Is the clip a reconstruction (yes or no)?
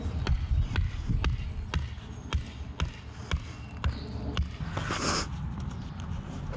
no